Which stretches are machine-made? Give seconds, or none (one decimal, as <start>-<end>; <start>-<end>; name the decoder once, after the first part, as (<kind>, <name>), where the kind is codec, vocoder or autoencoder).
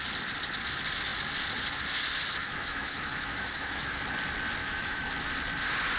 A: 2.4-4.0 (autoencoder, DAC-VAE); 4.6-5.1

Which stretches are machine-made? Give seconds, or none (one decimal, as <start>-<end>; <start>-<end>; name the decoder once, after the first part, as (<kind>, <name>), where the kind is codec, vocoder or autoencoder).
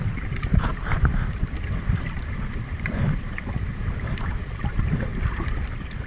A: 0.0-0.7 (vocoder, BigVGAN v2); 3.0-3.8; 4.3-6.1